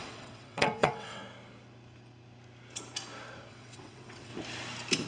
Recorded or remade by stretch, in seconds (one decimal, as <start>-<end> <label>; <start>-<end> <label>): 0.0-1.2 remade; 1.2-3.5 recorded; 3.5-4.3 remade; 4.3-5.1 recorded